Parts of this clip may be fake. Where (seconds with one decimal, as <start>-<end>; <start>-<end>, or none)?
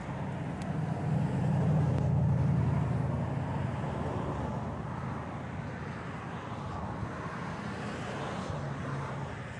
none